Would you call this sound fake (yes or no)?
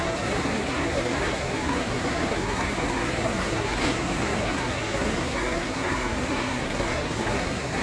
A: yes